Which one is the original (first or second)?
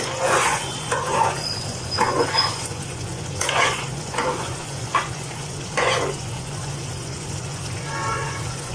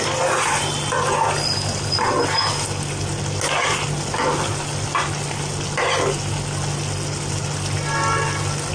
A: second